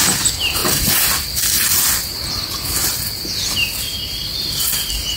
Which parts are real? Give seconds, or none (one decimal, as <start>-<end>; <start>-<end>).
0.0-5.2